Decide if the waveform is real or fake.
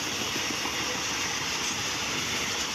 real